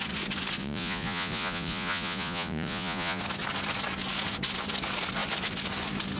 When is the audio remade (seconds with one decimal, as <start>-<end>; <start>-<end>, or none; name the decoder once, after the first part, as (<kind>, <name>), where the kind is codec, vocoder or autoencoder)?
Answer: 0.6-3.2 (vocoder, Vocos)